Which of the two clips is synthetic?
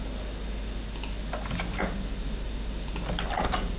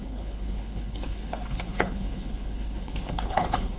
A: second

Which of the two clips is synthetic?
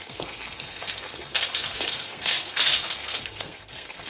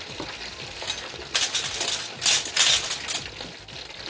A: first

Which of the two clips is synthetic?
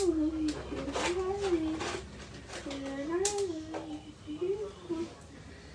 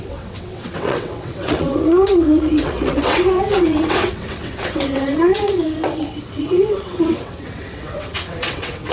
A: second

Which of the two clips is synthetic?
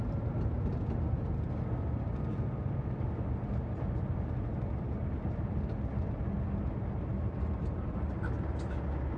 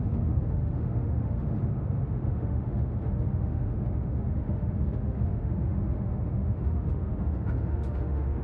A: second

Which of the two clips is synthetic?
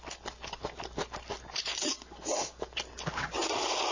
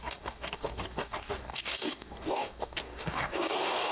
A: second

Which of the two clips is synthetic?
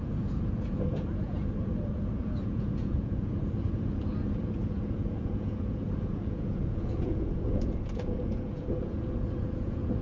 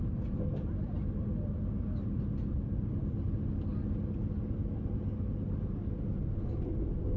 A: first